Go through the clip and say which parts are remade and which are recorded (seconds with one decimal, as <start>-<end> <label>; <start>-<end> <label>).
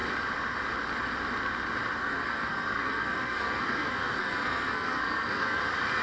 0.0-2.0 recorded; 2.0-5.6 remade; 5.6-6.0 recorded